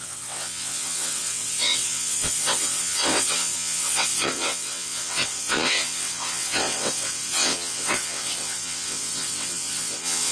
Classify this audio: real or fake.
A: fake